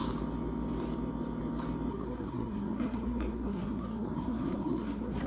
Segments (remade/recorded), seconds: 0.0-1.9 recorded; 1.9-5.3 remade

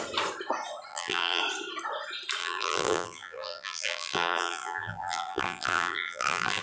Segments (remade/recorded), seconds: 0.0-0.9 recorded; 0.9-1.4 remade; 1.4-2.4 recorded; 2.4-6.6 remade

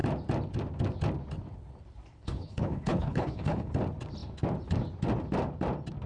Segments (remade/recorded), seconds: 0.0-2.1 recorded; 2.1-3.7 remade; 3.7-6.1 recorded